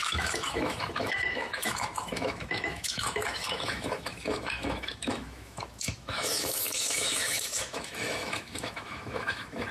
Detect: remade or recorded remade